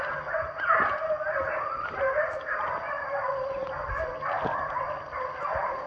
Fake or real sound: real